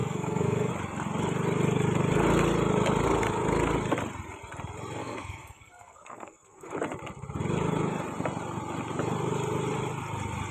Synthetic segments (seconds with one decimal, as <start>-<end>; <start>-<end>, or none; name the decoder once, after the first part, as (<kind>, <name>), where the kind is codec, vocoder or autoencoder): 0.0-0.7 (codec, SNAC); 5.0-6.7